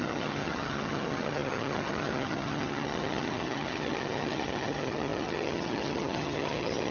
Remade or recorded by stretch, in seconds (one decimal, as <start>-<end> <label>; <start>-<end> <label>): 0.0-6.9 remade